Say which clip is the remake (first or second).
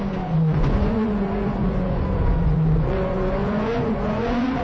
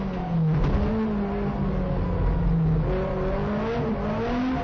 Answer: first